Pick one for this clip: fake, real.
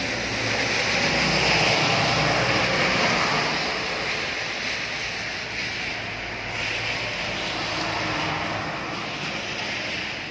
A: real